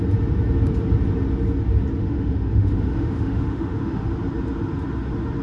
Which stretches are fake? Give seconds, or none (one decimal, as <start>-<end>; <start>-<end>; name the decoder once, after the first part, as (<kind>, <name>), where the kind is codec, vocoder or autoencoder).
2.0-4.1 (autoencoder, DAC-VAE)